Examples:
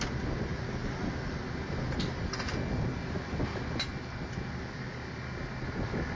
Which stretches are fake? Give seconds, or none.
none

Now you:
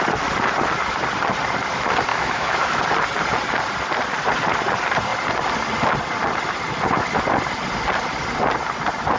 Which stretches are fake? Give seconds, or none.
2.1-2.8 (autoencoder, DAC-VAE)

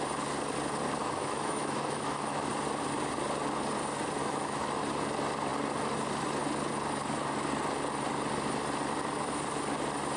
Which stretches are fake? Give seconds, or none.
1.0-2.5 (autoencoder, DAC-VAE); 4.2-4.8

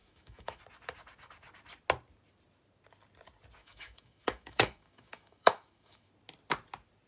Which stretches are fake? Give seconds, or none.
0.0-0.6 (autoencoder, DAC-VAE); 3.6-6.1

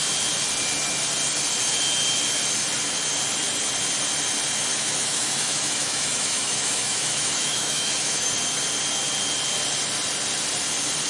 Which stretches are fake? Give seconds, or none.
4.7-8.3 (autoencoder, DAC-VAE)

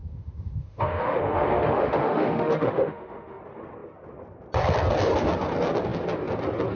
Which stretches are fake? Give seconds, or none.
0.0-3.4 (autoencoder, DAC-VAE)

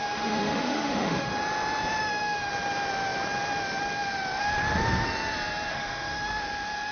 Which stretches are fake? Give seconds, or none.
0.0-1.3 (autoencoder, DAC-VAE); 2.0-2.5; 5.7-6.4

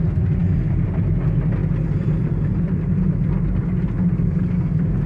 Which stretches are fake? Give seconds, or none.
none